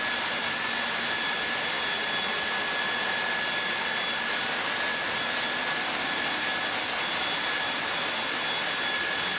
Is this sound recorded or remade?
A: recorded